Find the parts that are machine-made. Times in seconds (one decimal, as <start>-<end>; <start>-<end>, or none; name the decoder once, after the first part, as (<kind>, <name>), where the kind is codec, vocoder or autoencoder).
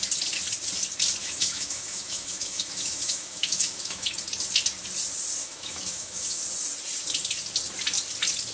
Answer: 1.2-4.1 (autoencoder, DAC-VAE); 5.4-6.4